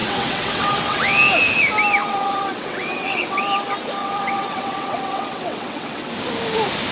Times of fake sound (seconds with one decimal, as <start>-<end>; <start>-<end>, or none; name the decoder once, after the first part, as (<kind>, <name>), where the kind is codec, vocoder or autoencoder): 0.0-1.0 (vocoder, WaveNeXt); 2.0-3.4; 4.0-6.1

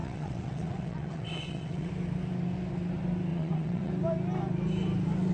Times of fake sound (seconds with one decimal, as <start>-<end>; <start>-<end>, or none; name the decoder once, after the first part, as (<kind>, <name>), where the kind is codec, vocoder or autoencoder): 0.0-1.9 (vocoder, WaveNeXt); 3.3-3.9

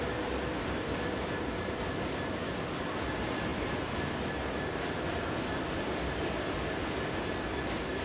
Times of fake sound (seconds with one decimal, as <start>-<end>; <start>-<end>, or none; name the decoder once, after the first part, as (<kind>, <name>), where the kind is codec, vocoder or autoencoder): none

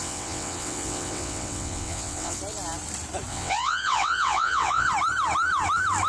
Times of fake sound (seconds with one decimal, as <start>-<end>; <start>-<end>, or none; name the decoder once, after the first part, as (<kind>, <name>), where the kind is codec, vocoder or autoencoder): 0.0-2.4 (vocoder, WaveNeXt); 3.3-4.9

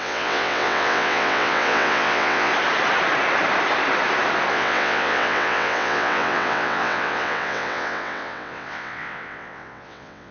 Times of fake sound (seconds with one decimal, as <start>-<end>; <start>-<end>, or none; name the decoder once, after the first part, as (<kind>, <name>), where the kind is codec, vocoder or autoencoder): 0.0-2.5 (vocoder, WaveNeXt); 4.5-10.3

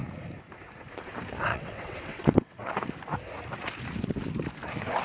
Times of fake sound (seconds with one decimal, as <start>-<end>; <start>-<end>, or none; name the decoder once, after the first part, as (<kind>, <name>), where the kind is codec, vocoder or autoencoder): 1.5-2.7 (vocoder, WaveNeXt)